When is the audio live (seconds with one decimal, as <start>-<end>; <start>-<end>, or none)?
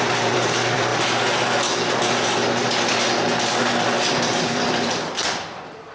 0.9-4.4